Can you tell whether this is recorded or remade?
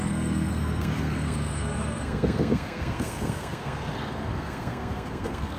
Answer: remade